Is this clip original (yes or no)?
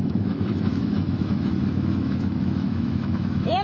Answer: no